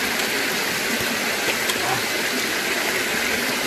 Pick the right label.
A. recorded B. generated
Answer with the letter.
A